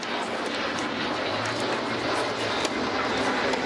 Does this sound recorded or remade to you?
recorded